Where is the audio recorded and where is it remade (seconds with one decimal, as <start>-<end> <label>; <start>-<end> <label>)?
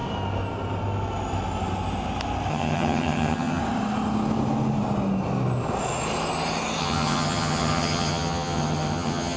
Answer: 0.0-2.5 recorded; 2.5-3.6 remade; 3.6-6.8 recorded; 6.8-9.4 remade